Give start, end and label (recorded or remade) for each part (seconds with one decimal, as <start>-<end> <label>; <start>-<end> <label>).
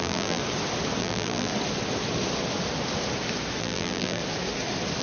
0.0-0.4 remade; 0.4-1.0 recorded; 1.0-1.5 remade; 1.5-3.6 recorded; 3.6-4.2 remade; 4.2-5.0 recorded